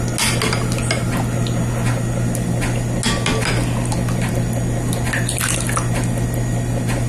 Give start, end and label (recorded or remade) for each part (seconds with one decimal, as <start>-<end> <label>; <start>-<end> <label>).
0.0-7.1 recorded